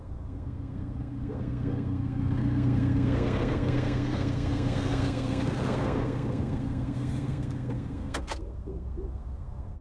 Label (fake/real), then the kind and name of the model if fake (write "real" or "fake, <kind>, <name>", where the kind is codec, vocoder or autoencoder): fake, codec, SNAC